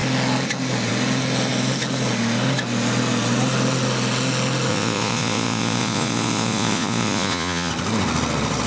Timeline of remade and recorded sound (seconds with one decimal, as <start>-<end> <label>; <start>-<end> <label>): 0.0-4.7 recorded; 4.7-7.7 remade; 7.7-8.7 recorded